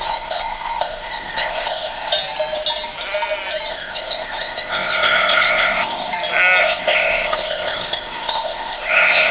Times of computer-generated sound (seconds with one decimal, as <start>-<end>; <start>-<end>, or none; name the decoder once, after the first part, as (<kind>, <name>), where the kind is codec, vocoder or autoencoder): 0.0-2.1 (codec, ZipCodec); 3.7-6.1; 6.6-9.3